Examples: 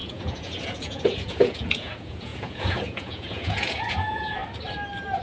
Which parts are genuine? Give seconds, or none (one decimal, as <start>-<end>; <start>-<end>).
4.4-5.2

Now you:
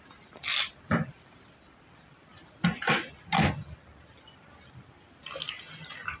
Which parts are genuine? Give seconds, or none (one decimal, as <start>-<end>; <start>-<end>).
0.0-6.2

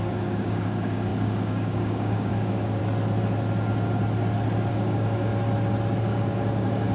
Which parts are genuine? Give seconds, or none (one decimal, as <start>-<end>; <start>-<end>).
2.8-4.7; 5.3-6.0